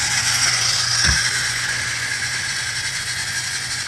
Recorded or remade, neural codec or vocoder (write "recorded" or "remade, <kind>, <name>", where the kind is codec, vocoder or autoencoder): remade, vocoder, Vocos